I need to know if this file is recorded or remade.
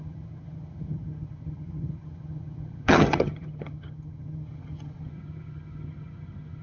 remade